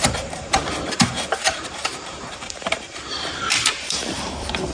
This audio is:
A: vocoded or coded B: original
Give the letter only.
A